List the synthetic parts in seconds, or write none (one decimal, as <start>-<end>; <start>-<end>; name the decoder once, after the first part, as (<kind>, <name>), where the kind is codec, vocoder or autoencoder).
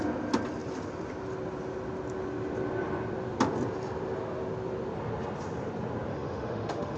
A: 6.1-7.0 (autoencoder, DAC-VAE)